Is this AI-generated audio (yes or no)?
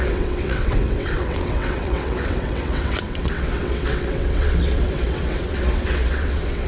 yes